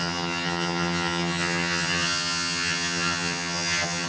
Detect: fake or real fake